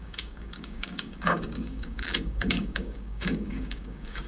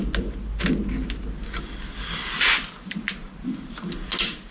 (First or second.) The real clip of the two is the second